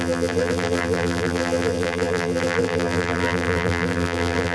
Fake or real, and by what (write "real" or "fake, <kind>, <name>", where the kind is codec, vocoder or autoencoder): fake, vocoder, BigVGAN v2